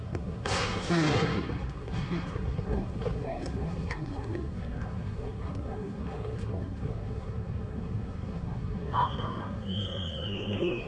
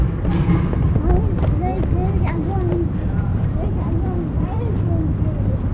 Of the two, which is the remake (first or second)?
first